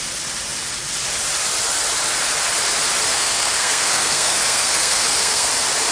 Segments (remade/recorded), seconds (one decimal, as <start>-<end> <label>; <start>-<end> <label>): 0.0-3.1 recorded; 3.1-5.5 remade; 5.5-5.9 recorded